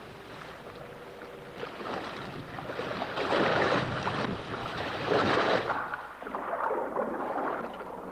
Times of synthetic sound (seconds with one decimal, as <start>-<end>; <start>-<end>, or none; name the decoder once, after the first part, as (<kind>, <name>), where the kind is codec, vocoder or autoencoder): 3.5-4.0 (autoencoder, DAC-VAE); 4.6-5.1